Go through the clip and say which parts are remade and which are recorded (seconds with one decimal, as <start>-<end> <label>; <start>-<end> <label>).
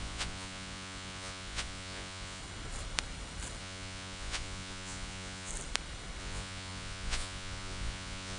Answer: 0.0-2.4 remade; 2.4-3.6 recorded; 3.6-5.5 remade; 5.5-6.2 recorded; 6.2-8.4 remade